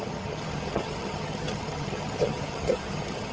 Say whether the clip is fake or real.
fake